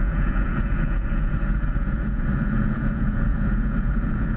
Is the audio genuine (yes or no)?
no